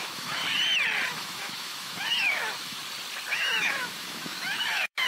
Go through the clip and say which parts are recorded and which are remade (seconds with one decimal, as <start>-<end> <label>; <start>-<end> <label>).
0.0-0.4 remade; 0.4-1.1 recorded; 1.1-2.8 remade; 2.8-3.3 recorded; 3.3-5.1 remade